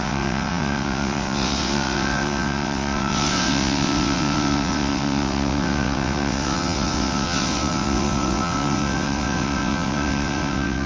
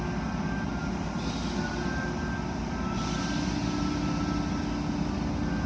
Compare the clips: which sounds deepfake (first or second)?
first